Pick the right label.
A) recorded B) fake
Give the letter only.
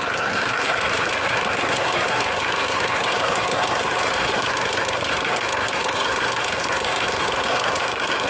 B